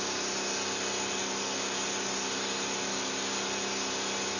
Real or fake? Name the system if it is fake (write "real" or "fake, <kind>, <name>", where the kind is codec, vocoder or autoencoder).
real